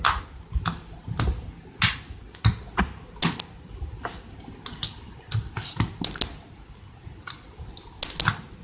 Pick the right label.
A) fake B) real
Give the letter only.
B